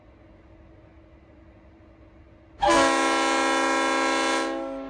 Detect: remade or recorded recorded